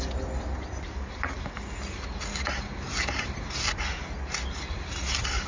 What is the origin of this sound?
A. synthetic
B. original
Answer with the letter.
B